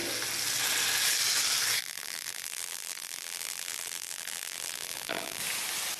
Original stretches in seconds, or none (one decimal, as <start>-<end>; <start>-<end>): 0.0-1.8; 5.4-6.0